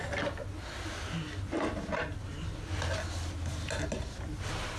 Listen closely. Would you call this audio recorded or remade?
recorded